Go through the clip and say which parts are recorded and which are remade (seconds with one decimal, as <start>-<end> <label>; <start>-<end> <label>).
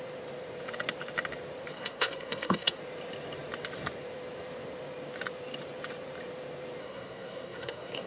0.0-1.7 recorded; 1.7-2.8 remade; 2.8-6.8 recorded; 6.8-8.1 remade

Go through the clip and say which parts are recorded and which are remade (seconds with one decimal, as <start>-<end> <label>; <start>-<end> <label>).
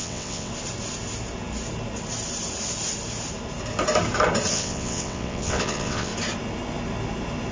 0.0-0.5 remade; 0.5-4.5 recorded; 4.5-6.1 remade; 6.1-7.5 recorded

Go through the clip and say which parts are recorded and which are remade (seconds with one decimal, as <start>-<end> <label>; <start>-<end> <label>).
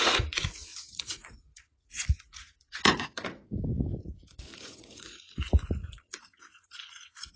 0.0-3.4 remade; 3.4-4.0 recorded; 4.0-7.4 remade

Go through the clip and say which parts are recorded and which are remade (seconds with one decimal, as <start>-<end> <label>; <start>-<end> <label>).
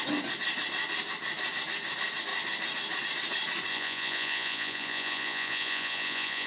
0.0-3.7 recorded; 3.7-6.5 remade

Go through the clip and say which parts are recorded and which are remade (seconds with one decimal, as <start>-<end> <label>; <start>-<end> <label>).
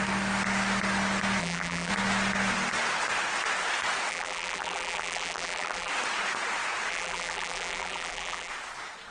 0.0-1.4 recorded; 1.4-1.9 remade; 1.9-4.1 recorded; 4.1-5.9 remade; 5.9-6.9 recorded; 6.9-8.5 remade; 8.5-9.1 recorded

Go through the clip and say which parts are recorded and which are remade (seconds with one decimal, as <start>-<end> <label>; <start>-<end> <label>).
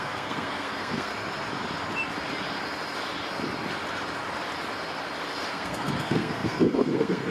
0.0-1.1 remade; 1.1-5.5 recorded; 5.5-7.3 remade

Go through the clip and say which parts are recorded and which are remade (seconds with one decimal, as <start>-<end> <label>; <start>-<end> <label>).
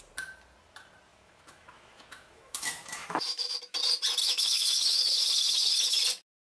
0.0-1.1 recorded; 1.1-3.6 remade; 3.6-4.2 recorded; 4.2-6.0 remade; 6.0-6.5 recorded